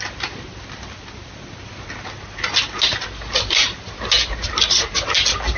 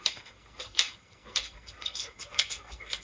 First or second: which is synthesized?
second